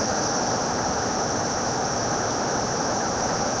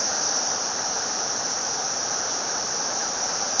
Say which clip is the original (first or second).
first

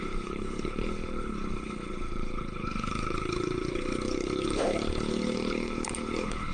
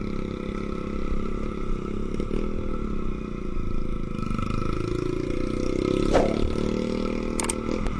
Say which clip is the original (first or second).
second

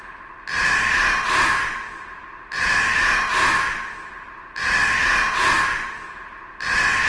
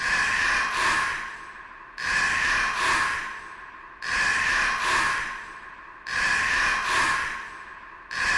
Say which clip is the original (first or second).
first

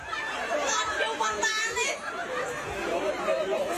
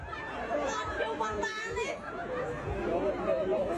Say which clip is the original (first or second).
second